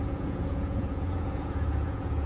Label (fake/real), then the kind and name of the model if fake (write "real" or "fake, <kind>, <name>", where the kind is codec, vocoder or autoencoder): fake, vocoder, Vocos